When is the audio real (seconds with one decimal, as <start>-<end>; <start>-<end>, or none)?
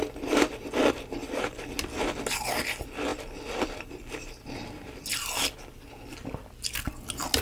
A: 0.0-3.1; 3.9-5.1; 6.3-7.4